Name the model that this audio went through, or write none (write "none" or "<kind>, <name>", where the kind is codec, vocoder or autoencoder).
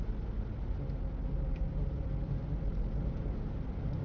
none